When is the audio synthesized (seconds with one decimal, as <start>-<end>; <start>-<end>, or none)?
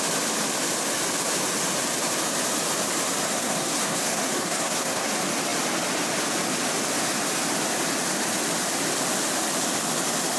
3.3-5.1